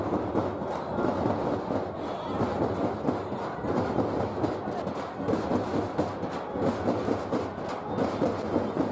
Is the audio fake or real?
real